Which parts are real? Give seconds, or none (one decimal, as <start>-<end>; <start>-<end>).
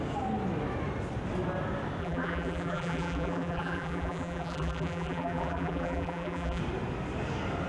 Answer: 0.0-2.0; 6.6-7.7